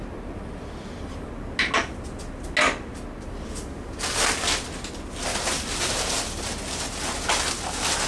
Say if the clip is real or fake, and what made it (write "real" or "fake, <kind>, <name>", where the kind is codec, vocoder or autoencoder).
real